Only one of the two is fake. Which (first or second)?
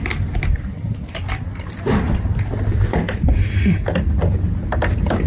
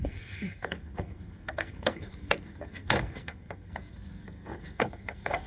second